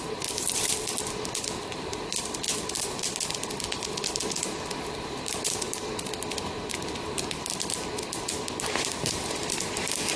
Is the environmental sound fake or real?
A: real